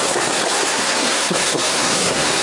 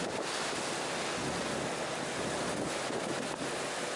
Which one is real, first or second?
second